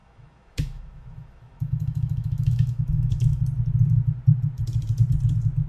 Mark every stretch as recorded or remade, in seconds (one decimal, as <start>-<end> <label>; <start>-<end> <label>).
0.0-3.4 remade; 3.4-5.7 recorded